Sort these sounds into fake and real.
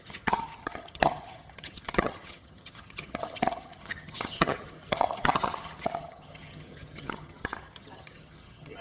fake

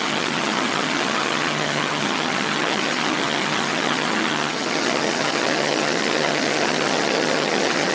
fake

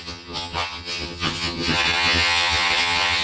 fake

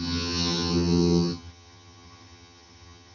fake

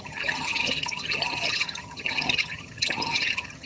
fake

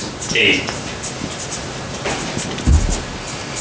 real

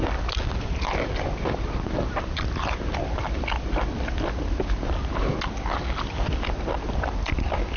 real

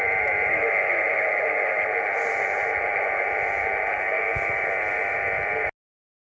real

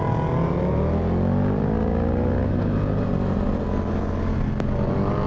real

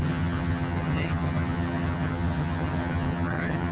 fake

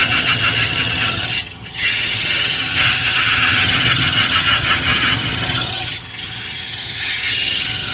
fake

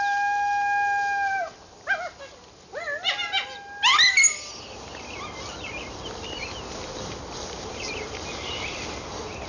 real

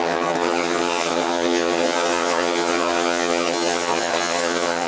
fake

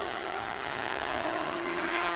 fake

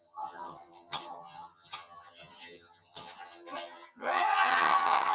fake